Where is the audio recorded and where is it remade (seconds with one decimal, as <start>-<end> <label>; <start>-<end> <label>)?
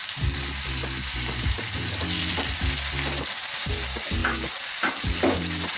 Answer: 0.0-0.8 recorded; 0.8-2.0 remade; 2.0-4.2 recorded; 4.2-5.8 remade